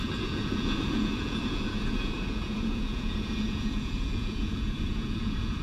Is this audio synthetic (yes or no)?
yes